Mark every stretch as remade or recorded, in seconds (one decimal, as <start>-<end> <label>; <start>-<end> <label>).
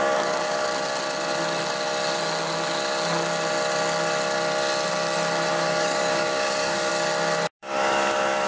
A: 0.0-0.7 remade; 0.7-5.5 recorded; 5.5-6.9 remade; 6.9-7.6 recorded; 7.6-8.5 remade